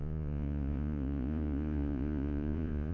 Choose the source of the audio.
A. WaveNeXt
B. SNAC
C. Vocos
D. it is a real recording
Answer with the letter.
C